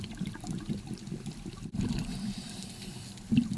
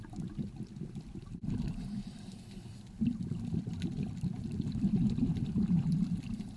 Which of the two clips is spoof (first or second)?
second